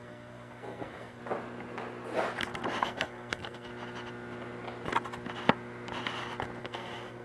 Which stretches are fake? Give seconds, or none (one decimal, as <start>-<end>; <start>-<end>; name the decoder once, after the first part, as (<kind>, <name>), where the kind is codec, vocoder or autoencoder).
0.0-1.2 (codec, SNAC); 2.8-3.7; 6.6-7.2